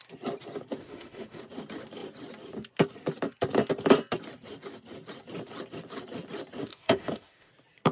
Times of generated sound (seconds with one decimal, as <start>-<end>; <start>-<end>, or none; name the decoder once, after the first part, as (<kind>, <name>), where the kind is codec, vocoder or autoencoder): 0.8-1.4 (autoencoder, DAC-VAE); 6.7-7.5